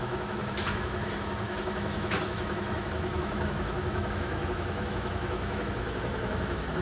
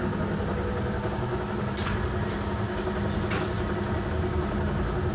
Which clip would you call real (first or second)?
second